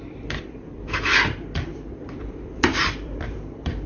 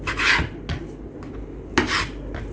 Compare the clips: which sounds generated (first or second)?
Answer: first